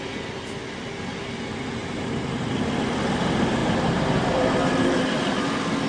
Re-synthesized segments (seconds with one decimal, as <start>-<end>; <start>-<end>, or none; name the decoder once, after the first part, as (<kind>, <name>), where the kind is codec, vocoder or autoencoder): 1.8-2.5 (vocoder, BigVGAN v2); 3.6-5.4